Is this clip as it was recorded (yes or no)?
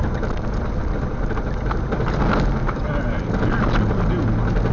yes